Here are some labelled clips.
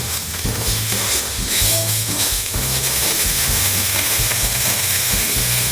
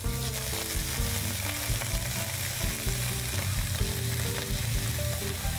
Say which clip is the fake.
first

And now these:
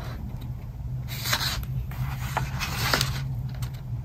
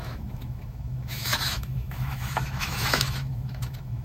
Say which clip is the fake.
second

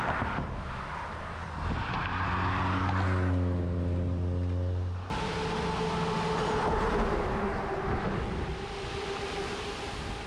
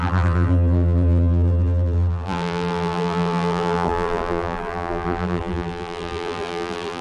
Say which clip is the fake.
second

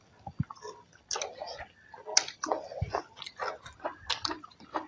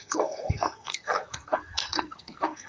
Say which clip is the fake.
second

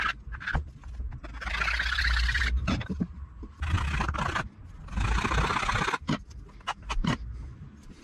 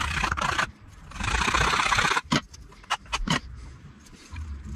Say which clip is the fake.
second